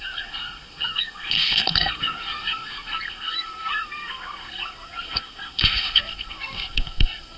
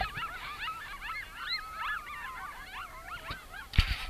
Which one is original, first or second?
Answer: second